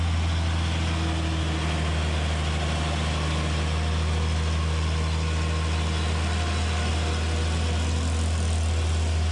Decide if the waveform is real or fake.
real